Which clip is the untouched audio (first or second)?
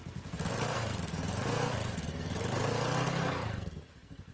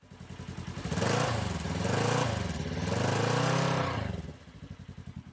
second